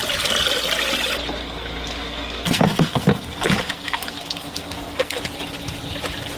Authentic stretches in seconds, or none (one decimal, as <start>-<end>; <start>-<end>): 0.0-1.4; 5.2-6.4